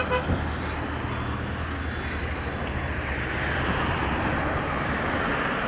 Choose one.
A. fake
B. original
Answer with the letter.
B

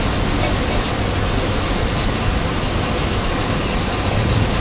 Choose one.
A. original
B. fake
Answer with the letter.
A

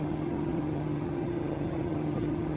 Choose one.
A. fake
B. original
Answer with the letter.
A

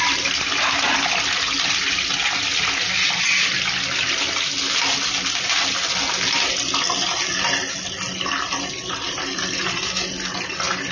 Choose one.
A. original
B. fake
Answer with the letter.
A